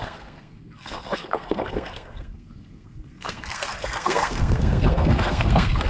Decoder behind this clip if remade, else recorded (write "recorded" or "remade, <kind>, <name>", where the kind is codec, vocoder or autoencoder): remade, codec, SNAC